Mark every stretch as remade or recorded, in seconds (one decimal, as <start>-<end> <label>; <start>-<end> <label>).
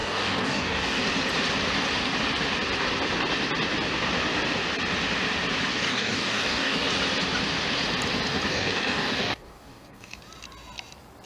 0.0-1.0 remade; 1.0-5.7 recorded; 5.7-6.9 remade; 6.9-8.5 recorded; 8.5-10.2 remade; 10.2-11.3 recorded